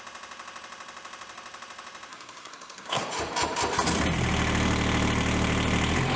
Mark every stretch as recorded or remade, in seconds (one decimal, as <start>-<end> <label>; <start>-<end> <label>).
0.0-2.1 recorded; 2.1-3.1 remade; 3.1-6.2 recorded